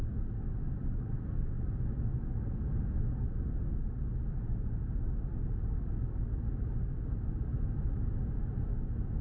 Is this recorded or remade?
recorded